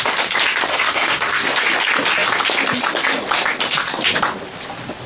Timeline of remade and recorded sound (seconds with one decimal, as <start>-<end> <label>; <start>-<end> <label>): 0.0-0.7 recorded; 0.7-1.5 remade; 1.5-5.1 recorded